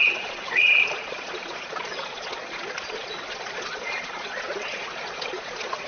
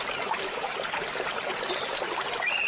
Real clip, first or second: second